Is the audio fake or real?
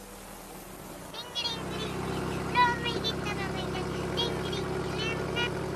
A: real